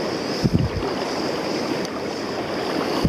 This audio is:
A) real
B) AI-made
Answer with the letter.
A